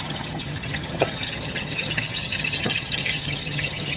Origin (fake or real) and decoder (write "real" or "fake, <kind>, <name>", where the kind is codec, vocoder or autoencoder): fake, vocoder, HiFi-GAN